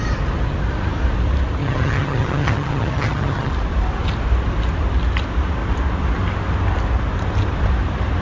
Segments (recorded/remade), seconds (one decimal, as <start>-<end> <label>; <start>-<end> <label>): 0.0-1.6 recorded; 1.6-3.5 remade; 3.5-8.2 recorded